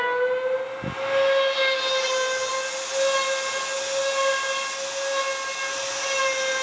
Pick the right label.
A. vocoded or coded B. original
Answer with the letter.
B